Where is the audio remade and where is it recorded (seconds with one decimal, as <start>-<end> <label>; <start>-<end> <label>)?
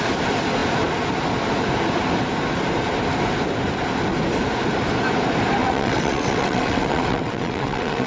0.0-5.6 recorded; 5.6-8.1 remade